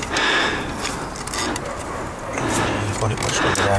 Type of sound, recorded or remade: recorded